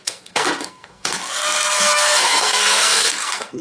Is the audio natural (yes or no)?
no